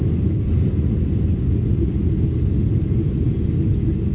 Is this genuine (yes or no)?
yes